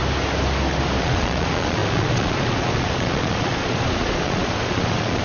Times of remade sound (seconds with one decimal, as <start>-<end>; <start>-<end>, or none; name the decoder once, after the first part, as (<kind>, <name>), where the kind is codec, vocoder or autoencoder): 1.0-5.2 (vocoder, Vocos)